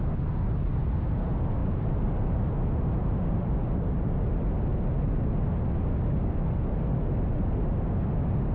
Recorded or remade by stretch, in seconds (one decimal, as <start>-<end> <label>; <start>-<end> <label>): 0.0-1.6 recorded; 1.6-2.3 remade; 2.3-3.0 recorded; 3.0-3.5 remade; 3.5-8.5 recorded